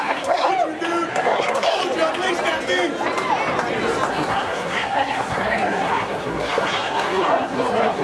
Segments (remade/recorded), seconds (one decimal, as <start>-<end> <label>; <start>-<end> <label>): 0.0-0.5 remade; 0.5-1.1 recorded; 1.1-1.8 remade; 1.8-4.1 recorded; 4.1-8.0 remade